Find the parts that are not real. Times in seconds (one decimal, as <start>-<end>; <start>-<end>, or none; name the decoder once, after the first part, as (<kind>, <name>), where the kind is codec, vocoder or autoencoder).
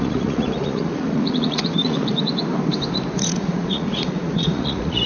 0.0-2.1 (vocoder, Vocos); 3.2-5.1